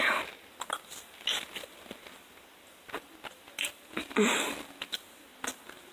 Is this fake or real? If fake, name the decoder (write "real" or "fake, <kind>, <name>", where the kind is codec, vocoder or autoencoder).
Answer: real